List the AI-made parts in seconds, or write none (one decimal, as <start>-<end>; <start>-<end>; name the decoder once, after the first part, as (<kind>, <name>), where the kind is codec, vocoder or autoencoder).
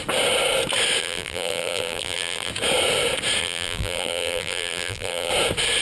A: 1.0-2.5 (vocoder, BigVGAN v2); 3.4-5.3